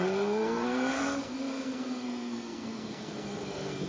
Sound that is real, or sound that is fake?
fake